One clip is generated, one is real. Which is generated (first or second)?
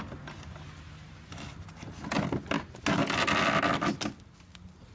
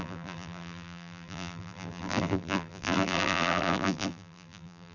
second